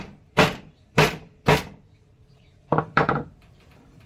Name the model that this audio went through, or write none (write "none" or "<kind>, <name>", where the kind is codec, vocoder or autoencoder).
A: vocoder, BigVGAN v2